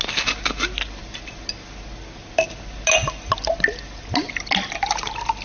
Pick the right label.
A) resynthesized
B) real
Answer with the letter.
B